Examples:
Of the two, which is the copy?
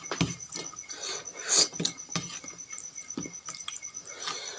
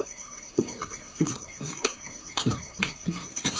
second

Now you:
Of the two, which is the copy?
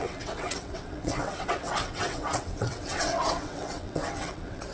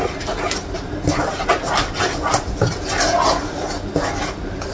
first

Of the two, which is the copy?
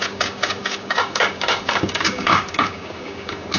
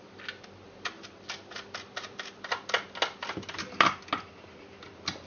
first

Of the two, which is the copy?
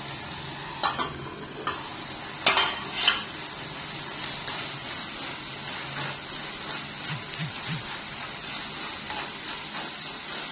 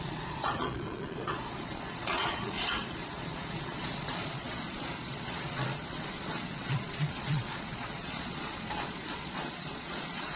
second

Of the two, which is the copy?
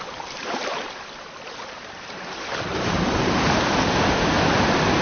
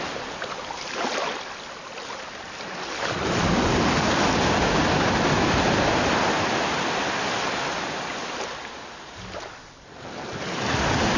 first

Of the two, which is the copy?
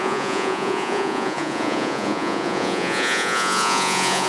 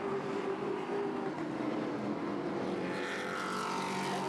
first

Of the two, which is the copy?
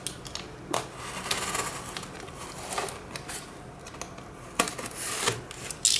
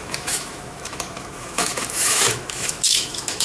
second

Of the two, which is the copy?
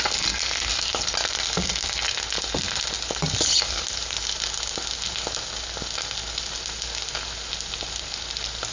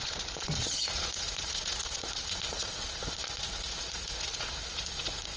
second